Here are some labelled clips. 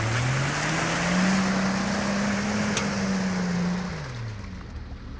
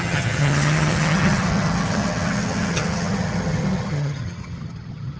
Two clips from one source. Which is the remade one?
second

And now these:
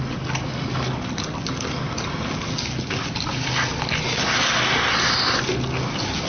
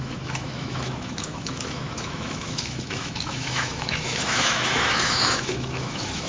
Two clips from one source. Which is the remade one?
second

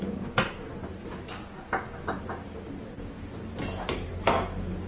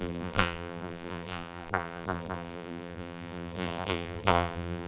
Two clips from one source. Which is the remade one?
second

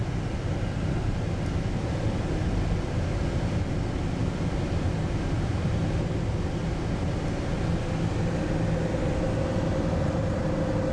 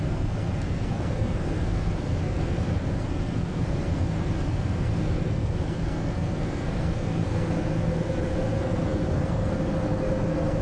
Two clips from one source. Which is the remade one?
second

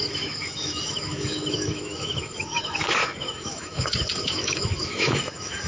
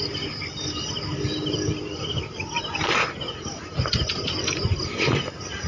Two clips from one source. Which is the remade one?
first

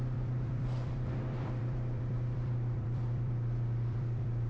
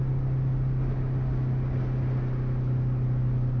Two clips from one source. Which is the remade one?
first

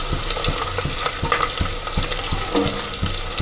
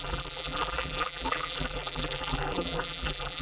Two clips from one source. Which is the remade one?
second